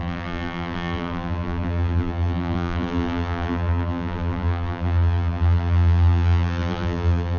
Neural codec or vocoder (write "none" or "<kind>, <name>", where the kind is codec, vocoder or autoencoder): vocoder, BigVGAN v2